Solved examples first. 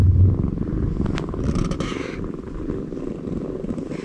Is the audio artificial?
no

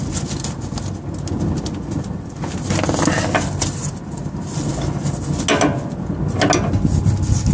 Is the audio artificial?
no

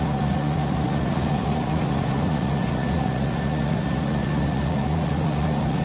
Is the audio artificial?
yes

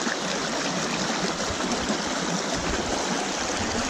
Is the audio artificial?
no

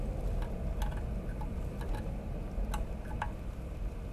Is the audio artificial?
no